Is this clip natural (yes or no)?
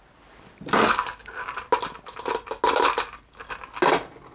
yes